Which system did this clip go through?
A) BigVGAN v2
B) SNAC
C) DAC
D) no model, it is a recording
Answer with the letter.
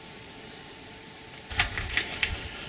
D